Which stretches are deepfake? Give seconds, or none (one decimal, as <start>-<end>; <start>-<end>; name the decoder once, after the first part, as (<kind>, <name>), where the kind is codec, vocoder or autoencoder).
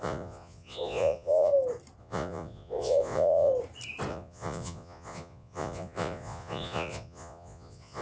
0.0-1.5 (vocoder, Vocos); 2.0-3.5; 4.1-8.0